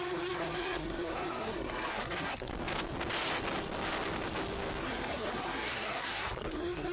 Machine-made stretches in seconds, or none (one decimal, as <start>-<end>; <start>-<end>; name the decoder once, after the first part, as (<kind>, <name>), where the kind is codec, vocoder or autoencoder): 0.0-2.5 (codec, SNAC); 4.8-6.9